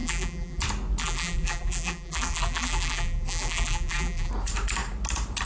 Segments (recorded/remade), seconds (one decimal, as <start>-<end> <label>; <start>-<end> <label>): 0.0-0.6 remade; 0.6-1.0 recorded; 1.0-4.3 remade; 4.3-5.5 recorded